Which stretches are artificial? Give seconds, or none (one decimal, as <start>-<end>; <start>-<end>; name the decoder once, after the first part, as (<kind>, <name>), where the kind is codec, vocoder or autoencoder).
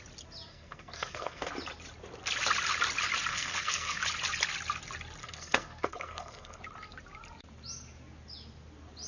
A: 0.5-1.5 (codec, SNAC); 3.3-4.0; 5.2-6.6